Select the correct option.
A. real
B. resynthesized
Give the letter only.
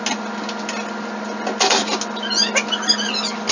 A